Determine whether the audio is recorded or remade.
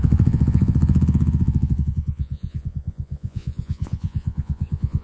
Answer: remade